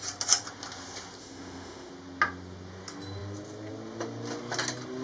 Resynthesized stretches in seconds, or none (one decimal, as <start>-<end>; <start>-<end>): 1.2-1.9